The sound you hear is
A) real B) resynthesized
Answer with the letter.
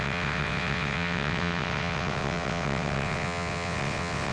B